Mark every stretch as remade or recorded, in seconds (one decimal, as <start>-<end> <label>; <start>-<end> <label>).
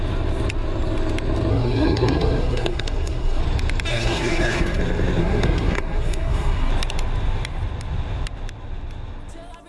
0.0-1.5 recorded; 1.5-3.4 remade; 3.4-3.9 recorded; 3.9-4.8 remade; 4.8-5.2 recorded; 5.2-6.7 remade; 6.7-9.7 recorded